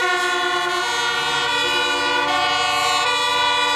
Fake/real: real